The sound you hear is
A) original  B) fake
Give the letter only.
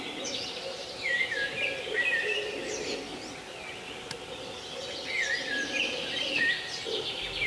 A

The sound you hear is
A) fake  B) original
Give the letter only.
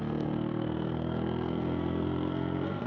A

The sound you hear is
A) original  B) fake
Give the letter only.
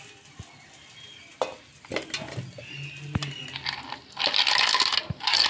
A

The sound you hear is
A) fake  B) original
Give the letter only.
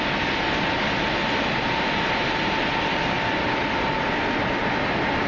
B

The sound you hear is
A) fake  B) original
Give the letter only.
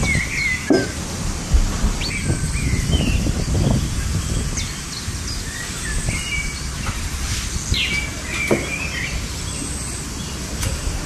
B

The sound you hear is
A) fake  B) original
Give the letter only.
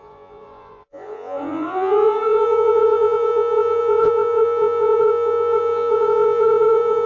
A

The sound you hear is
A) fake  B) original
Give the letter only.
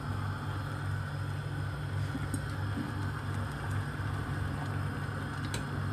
B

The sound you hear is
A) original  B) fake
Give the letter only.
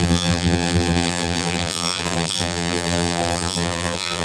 B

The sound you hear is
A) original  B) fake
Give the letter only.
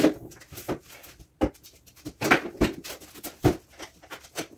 A